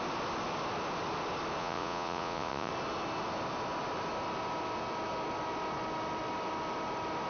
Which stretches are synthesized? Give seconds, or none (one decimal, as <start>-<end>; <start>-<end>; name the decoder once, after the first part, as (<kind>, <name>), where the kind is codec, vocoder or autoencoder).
1.6-2.7 (vocoder, Vocos)